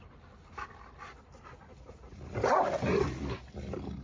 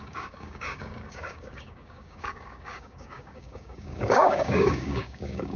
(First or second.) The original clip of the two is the first